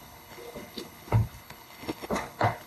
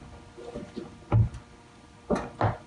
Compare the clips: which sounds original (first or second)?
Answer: second